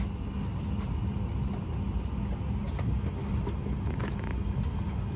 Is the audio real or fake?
real